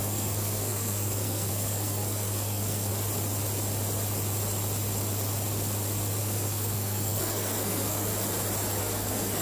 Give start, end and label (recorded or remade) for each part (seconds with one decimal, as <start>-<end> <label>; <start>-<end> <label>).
0.0-2.9 remade; 2.9-6.2 recorded; 6.2-8.1 remade; 8.1-8.8 recorded; 8.8-9.4 remade